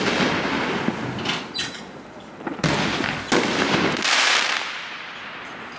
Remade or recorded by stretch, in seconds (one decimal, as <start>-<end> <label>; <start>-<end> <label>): 0.0-1.6 recorded; 1.6-2.7 remade; 2.7-3.5 recorded; 3.5-5.0 remade; 5.0-5.8 recorded

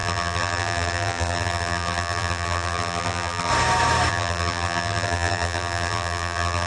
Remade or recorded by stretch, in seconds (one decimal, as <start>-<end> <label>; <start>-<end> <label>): 0.0-3.5 remade; 3.5-4.1 recorded; 4.1-6.7 remade

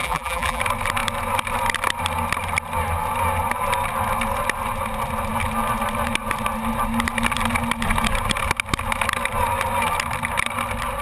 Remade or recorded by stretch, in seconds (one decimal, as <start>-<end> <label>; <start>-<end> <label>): 0.0-0.6 remade; 0.6-11.0 recorded

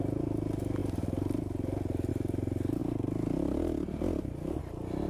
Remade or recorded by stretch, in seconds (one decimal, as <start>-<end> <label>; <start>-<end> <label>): 0.0-5.1 recorded

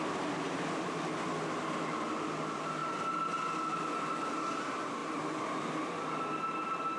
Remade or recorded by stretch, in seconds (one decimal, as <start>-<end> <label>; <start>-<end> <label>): 0.0-7.0 recorded

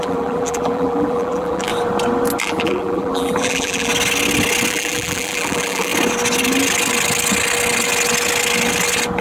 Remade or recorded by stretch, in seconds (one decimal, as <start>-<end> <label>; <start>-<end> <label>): 0.0-1.7 remade; 1.7-2.4 recorded; 2.4-3.9 remade; 3.9-4.7 recorded; 4.7-5.9 remade; 5.9-9.2 recorded

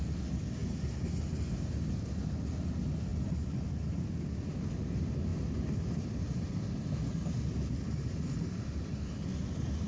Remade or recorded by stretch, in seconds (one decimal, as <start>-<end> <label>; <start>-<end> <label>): 0.0-3.1 recorded; 3.1-4.7 remade; 4.7-5.3 recorded; 5.3-6.8 remade; 6.8-9.9 recorded